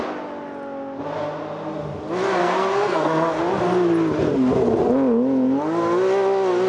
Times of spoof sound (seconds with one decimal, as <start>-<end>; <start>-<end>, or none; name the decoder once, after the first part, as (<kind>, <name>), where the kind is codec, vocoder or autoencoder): 2.4-3.4 (codec, SNAC)